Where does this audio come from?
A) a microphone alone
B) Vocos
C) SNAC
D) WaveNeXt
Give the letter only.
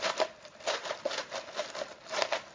A